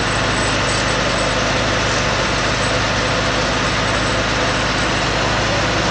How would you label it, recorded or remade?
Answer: recorded